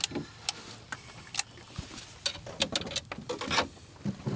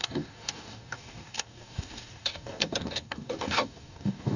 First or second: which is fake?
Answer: second